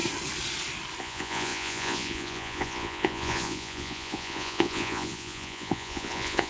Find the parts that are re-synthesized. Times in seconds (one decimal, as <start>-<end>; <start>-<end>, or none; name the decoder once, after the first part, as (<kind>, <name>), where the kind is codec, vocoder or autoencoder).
1.0-6.5 (vocoder, Vocos)